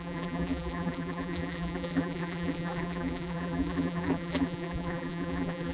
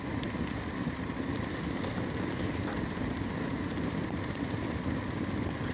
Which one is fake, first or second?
first